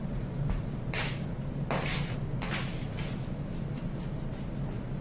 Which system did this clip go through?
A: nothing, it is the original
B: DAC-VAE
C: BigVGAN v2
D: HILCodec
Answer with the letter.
A